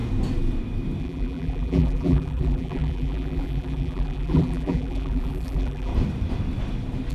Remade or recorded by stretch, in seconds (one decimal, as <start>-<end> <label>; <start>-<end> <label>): 0.0-1.0 recorded; 1.0-5.9 remade; 5.9-7.1 recorded